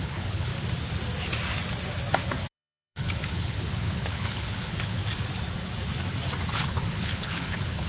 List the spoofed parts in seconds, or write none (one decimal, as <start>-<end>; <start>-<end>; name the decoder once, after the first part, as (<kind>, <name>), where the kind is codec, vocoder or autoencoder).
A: 0.0-0.5 (codec, HILCodec); 2.5-5.0; 6.5-7.9